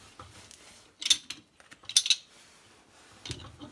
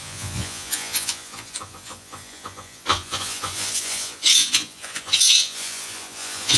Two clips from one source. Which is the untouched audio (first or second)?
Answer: first